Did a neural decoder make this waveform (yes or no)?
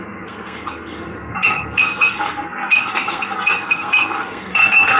yes